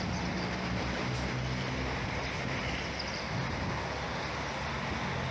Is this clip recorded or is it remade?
recorded